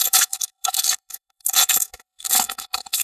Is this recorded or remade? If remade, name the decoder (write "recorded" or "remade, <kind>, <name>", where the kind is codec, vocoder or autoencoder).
remade, codec, SNAC